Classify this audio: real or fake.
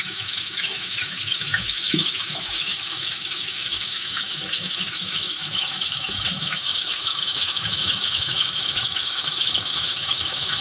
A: fake